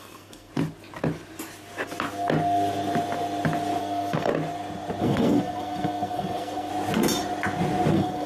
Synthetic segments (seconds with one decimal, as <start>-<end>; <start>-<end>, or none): 0.0-0.5; 3.8-4.3; 5.0-6.7; 7.9-8.3

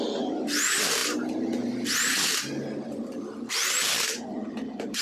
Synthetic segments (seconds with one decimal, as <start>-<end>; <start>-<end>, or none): 3.6-4.6

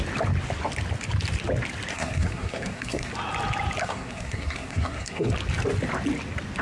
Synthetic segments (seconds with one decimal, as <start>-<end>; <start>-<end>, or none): 1.9-3.1; 3.8-5.3

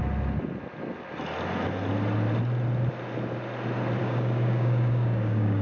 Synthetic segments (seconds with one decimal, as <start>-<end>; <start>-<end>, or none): 4.0-5.6

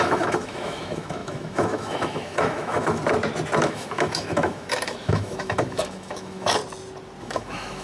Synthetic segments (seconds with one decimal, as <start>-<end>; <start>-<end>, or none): 0.0-3.0; 3.6-6.6; 7.2-7.8

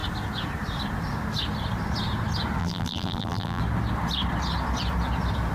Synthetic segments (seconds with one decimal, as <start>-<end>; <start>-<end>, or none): 2.6-3.6

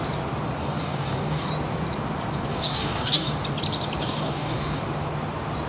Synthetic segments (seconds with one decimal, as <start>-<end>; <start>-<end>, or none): 0.6-1.5; 2.5-3.3; 4.0-4.8